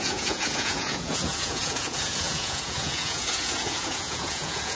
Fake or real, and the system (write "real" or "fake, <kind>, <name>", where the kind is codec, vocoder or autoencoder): fake, vocoder, Vocos